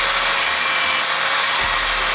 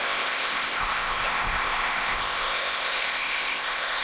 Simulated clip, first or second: second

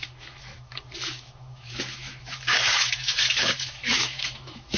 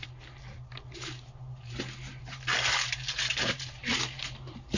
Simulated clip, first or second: first